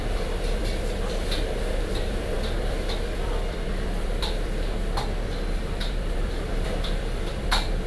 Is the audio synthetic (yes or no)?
yes